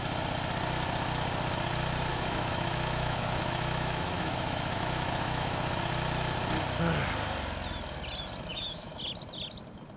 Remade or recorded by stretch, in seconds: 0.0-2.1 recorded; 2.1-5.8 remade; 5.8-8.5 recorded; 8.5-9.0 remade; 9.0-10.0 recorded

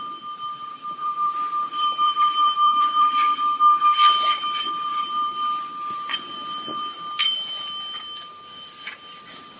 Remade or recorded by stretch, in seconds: 0.0-1.0 recorded; 1.0-3.6 remade; 3.6-4.9 recorded; 4.9-7.8 remade; 7.8-8.3 recorded; 8.3-8.9 remade; 8.9-9.6 recorded

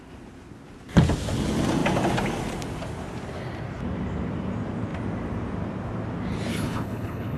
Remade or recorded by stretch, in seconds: 0.0-6.5 recorded; 6.5-7.4 remade